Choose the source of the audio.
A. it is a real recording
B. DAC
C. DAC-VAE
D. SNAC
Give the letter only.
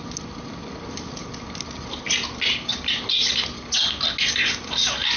A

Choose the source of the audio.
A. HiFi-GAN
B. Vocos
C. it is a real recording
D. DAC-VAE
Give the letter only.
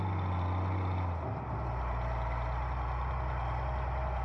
C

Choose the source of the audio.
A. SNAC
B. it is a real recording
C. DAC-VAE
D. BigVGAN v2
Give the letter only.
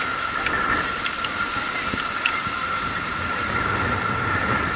B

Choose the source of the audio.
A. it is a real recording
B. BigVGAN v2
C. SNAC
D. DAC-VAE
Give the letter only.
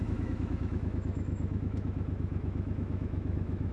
D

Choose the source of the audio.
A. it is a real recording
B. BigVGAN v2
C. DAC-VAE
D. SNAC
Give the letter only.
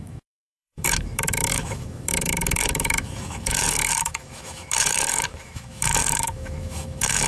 C